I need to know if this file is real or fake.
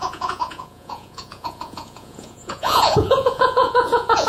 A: fake